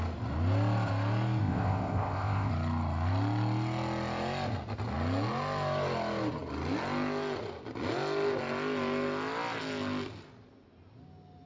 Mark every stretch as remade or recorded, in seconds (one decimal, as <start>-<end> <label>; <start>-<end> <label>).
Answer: 0.0-1.4 recorded; 1.4-2.5 remade; 2.5-11.5 recorded